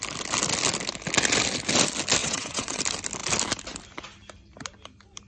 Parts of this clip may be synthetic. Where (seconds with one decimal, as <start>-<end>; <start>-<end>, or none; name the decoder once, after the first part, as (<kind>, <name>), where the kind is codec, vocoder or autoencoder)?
2.2-2.8 (vocoder, WaveNeXt)